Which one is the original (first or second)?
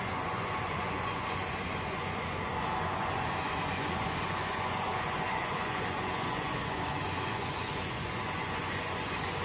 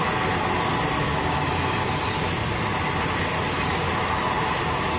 second